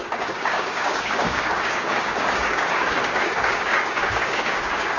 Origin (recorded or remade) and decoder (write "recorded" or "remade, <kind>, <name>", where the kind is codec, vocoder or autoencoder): remade, codec, DAC